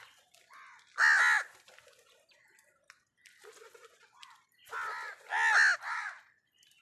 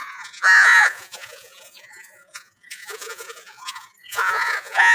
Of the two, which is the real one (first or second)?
first